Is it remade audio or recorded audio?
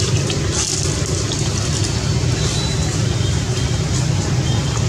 recorded